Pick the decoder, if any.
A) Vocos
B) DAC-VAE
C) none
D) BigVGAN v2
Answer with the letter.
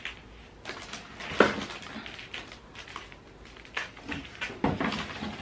C